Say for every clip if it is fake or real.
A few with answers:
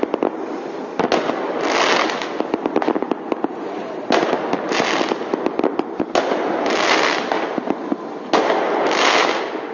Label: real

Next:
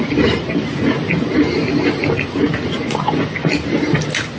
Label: real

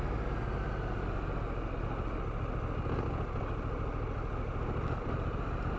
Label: real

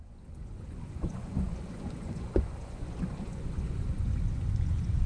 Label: fake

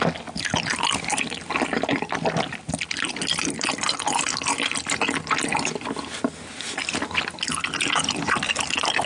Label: real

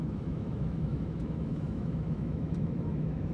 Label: fake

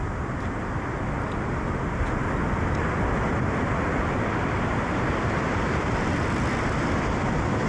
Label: real